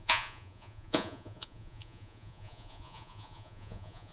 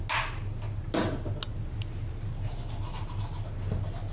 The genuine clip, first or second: second